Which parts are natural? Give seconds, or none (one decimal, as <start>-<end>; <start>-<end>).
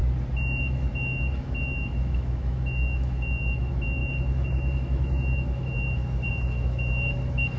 0.0-0.6